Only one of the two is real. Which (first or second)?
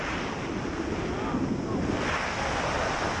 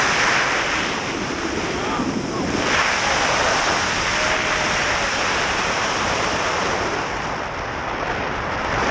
first